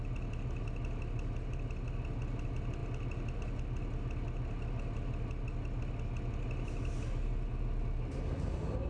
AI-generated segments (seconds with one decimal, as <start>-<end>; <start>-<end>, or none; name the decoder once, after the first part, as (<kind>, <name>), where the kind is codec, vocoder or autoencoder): none